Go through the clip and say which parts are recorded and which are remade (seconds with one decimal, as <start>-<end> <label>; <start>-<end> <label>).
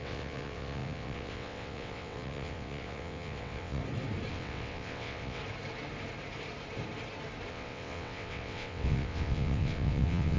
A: 0.0-3.8 remade; 3.8-4.3 recorded; 4.3-5.4 remade; 5.4-7.5 recorded; 7.5-10.4 remade